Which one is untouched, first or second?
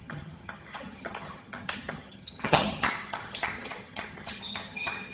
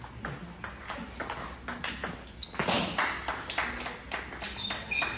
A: second